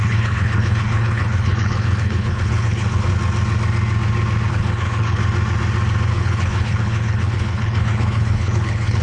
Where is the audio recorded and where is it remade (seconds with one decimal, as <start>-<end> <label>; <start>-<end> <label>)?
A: 0.0-3.1 remade; 3.1-4.5 recorded; 4.5-5.2 remade; 5.2-6.1 recorded; 6.1-9.0 remade